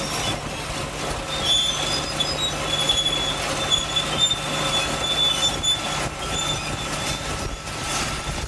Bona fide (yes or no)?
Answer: yes